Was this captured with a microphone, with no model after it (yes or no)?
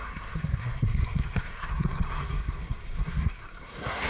no